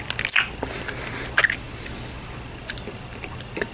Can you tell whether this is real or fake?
real